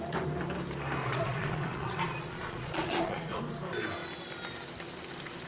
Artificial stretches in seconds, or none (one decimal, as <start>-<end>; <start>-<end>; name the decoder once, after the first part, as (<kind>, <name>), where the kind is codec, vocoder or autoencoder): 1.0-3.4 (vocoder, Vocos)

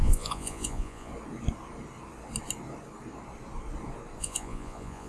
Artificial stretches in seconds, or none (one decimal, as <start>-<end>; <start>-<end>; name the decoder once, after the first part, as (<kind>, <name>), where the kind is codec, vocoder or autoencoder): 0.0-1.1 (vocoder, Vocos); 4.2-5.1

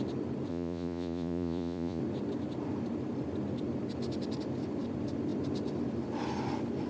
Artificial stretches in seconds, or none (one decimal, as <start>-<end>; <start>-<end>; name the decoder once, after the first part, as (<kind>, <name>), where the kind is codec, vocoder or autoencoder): 0.5-2.0 (vocoder, Vocos)

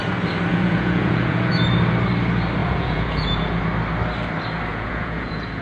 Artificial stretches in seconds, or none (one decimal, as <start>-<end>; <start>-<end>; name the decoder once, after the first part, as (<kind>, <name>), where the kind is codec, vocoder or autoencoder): 0.5-1.5 (vocoder, Vocos); 2.6-3.6; 4.7-5.6

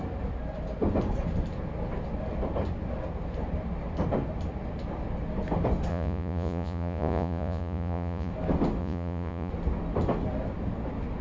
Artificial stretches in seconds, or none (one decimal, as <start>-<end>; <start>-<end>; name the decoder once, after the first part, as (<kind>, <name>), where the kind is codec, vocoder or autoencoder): 5.9-8.3 (vocoder, Vocos); 8.8-9.5